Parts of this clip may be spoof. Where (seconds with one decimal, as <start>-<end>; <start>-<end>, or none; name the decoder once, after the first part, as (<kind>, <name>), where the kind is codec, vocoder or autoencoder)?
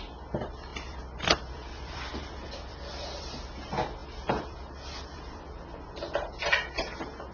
0.7-3.2 (vocoder, BigVGAN v2); 4.0-5.9